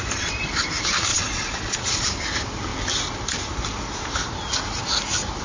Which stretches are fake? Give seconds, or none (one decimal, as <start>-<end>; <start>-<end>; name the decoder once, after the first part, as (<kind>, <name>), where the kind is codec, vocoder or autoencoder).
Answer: 1.1-2.1 (vocoder, Vocos)